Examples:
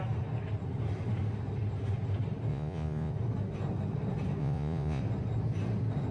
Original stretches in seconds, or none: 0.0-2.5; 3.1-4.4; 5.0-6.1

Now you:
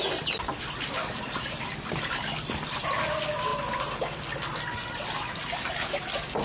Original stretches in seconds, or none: 0.0-6.4

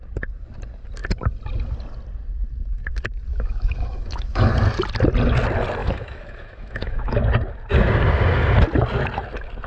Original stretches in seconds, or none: 0.0-3.3; 4.5-5.8; 7.2-9.7

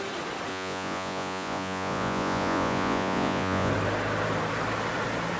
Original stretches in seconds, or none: 0.0-0.5; 3.7-5.4